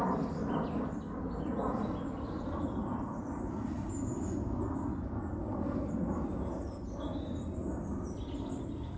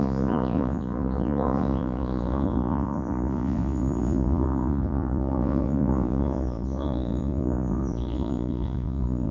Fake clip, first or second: second